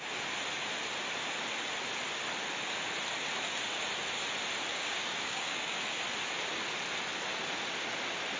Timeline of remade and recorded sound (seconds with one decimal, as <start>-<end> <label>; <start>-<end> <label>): 0.0-4.7 recorded; 4.7-5.8 remade; 5.8-8.4 recorded